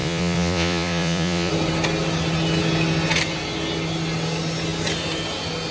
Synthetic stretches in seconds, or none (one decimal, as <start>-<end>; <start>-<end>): 0.0-1.5